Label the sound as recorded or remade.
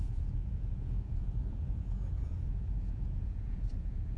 remade